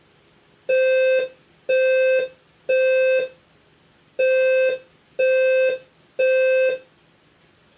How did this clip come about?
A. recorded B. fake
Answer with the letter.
A